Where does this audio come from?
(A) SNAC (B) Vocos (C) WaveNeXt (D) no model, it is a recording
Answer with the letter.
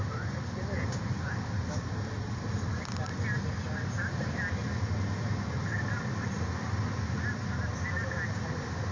D